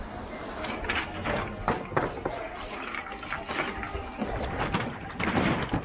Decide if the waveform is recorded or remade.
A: recorded